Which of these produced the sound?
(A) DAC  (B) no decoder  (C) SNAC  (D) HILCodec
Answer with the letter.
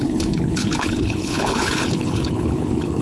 D